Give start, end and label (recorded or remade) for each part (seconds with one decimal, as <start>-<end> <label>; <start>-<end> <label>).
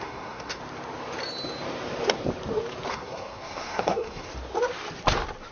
0.0-0.6 remade; 0.6-2.9 recorded; 2.9-4.3 remade; 4.3-5.5 recorded